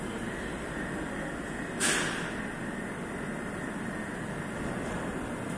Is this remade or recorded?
recorded